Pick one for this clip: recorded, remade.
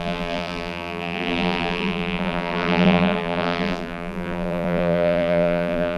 remade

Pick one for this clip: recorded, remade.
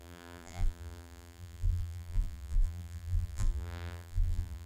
remade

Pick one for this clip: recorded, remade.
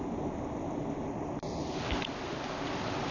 recorded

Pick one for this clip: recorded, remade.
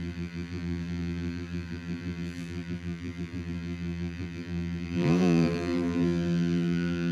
remade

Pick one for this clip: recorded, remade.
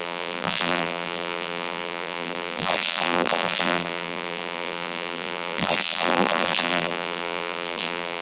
remade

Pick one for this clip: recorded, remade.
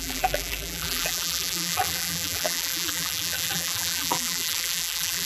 remade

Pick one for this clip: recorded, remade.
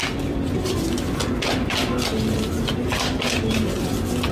recorded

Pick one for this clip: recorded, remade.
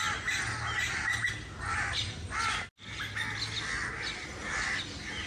recorded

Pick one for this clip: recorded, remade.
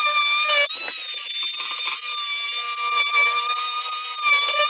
recorded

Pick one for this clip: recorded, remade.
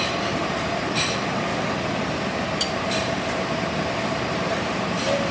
remade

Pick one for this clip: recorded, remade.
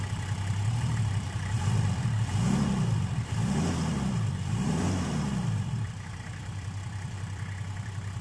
remade